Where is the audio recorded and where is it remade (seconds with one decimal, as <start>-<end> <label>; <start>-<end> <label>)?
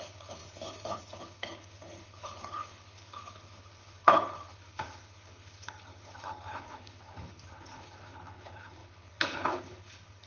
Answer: 0.0-10.3 remade